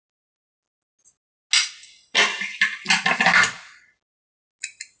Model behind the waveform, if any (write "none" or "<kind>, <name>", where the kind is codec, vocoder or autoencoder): none